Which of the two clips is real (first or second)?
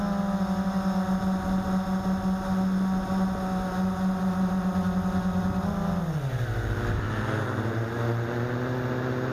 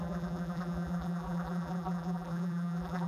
first